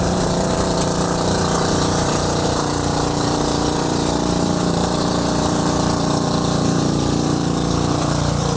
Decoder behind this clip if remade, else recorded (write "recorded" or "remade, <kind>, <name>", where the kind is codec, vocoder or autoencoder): remade, vocoder, BigVGAN v2